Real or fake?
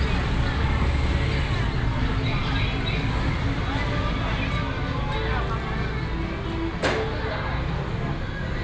real